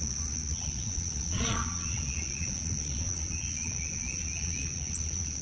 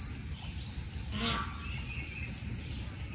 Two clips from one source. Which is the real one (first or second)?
second